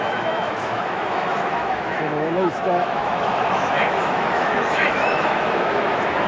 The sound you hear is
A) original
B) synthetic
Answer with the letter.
B